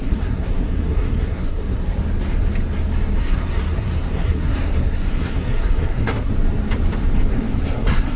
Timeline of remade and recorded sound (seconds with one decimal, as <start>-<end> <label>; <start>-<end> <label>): 0.0-2.0 remade; 2.0-3.2 recorded; 3.2-6.3 remade; 6.3-7.3 recorded; 7.3-8.2 remade